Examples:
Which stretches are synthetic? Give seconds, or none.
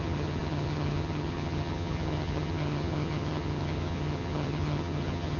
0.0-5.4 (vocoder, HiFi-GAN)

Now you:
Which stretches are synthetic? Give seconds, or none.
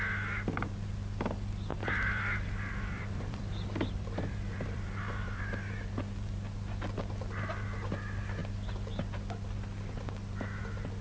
1.7-5.4 (vocoder, BigVGAN v2)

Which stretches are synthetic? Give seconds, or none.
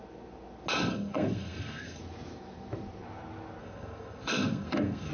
0.9-2.0 (codec, SNAC); 3.6-5.1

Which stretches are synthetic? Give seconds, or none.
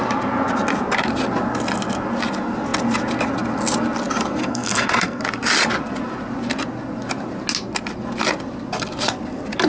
4.4-5.2 (codec, SNAC)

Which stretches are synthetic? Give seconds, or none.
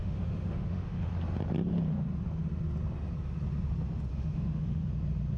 0.0-1.1 (autoencoder, DAC-VAE); 4.1-4.9